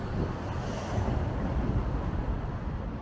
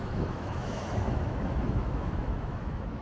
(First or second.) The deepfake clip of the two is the second